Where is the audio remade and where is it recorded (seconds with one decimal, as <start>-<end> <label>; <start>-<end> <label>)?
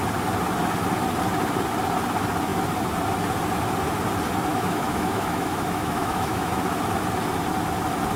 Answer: 0.0-4.5 recorded; 4.5-6.5 remade; 6.5-8.2 recorded